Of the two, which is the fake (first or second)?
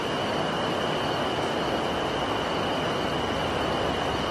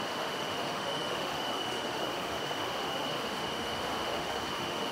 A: second